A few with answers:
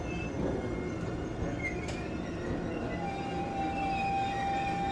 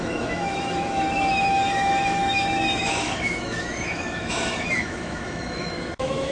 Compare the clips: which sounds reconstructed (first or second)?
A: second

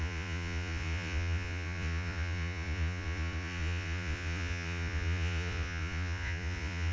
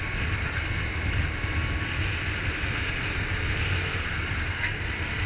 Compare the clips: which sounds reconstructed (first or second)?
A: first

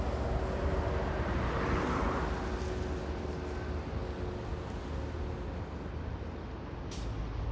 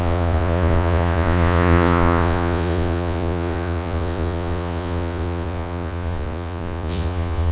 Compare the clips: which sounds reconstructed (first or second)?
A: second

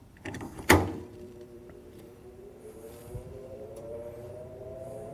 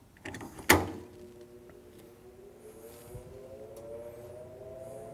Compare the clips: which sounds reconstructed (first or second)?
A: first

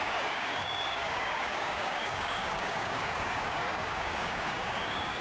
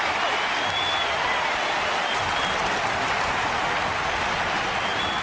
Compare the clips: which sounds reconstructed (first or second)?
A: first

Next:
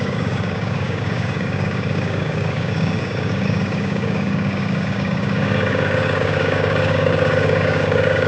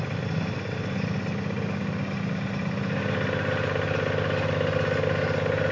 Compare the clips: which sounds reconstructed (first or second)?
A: first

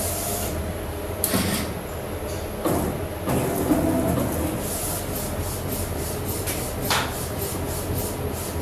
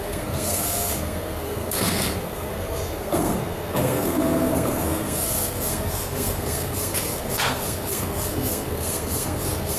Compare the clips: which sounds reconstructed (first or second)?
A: second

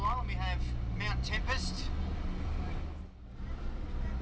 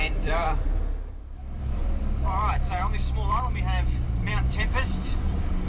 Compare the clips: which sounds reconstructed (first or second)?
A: second